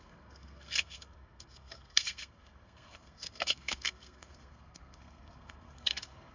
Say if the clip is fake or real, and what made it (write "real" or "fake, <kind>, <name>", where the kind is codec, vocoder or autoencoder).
fake, codec, SNAC